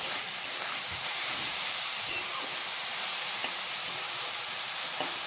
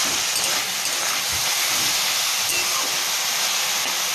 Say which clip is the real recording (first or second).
second